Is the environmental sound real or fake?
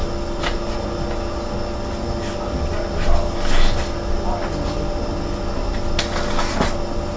real